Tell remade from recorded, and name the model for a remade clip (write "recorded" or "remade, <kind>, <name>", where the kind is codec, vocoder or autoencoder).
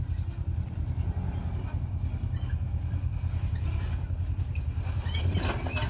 recorded